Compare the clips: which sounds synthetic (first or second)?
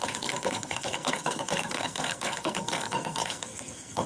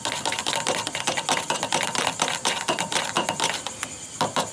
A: first